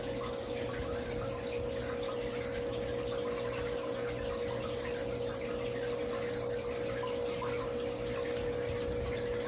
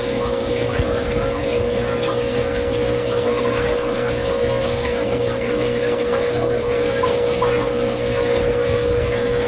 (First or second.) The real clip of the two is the first